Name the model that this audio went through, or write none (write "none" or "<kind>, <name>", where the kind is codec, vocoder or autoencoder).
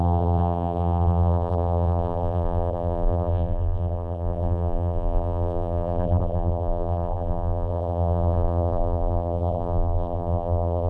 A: vocoder, BigVGAN v2